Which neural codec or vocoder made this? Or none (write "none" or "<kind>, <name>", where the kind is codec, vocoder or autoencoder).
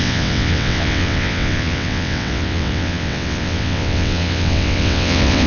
vocoder, WaveNeXt